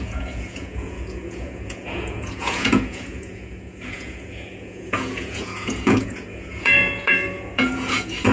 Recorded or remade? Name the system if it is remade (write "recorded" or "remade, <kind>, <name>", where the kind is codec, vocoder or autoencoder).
remade, vocoder, Vocos